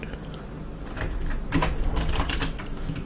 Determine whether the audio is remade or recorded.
recorded